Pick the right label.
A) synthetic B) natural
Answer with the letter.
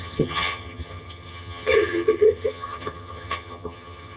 A